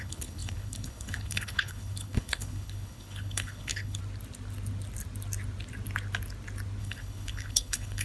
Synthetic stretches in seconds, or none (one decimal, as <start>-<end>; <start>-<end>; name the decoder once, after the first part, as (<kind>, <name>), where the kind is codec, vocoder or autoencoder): 0.0-4.0 (codec, HILCodec); 6.8-8.0